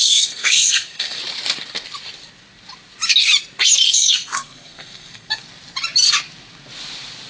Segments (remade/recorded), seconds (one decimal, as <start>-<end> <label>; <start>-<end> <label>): 0.0-1.2 remade; 1.2-3.9 recorded; 3.9-5.4 remade; 5.4-7.3 recorded